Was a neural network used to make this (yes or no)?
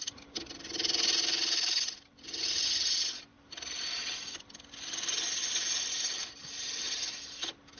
no